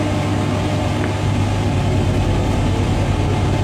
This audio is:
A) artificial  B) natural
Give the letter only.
B